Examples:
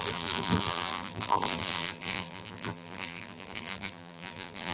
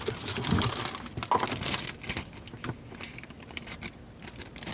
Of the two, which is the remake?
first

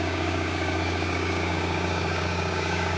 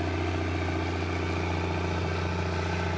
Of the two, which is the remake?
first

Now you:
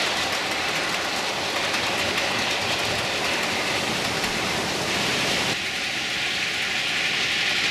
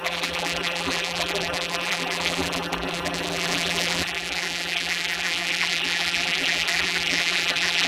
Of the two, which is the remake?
second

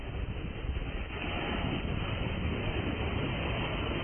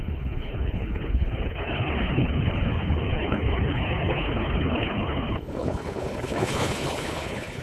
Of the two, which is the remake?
second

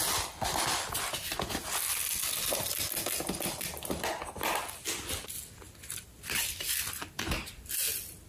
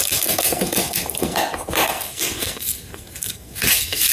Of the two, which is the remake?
second